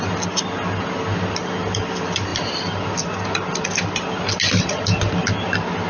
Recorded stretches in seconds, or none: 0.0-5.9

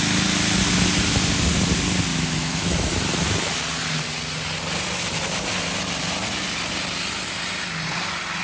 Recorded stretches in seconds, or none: 0.0-2.1; 2.9-8.4

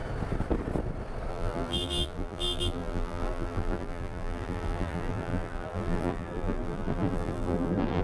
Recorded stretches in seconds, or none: 0.0-1.3

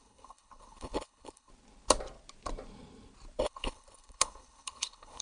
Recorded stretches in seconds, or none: 1.5-3.4

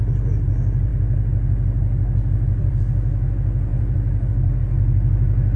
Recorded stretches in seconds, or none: 0.0-0.9; 2.8-3.7; 4.3-5.6

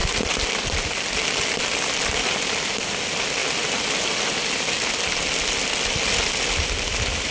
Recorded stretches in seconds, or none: 0.0-7.3